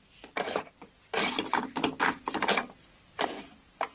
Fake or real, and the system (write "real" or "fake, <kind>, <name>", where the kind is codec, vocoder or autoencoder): real